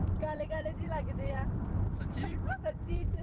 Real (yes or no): no